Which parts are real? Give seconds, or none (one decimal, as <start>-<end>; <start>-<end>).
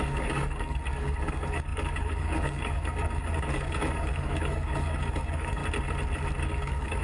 5.6-6.4